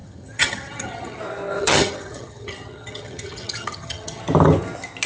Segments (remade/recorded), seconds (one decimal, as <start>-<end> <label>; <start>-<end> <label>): 0.0-1.2 remade; 1.2-1.6 recorded; 1.6-4.2 remade; 4.2-5.1 recorded